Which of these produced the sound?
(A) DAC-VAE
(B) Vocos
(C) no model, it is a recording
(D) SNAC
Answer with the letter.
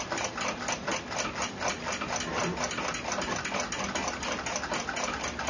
C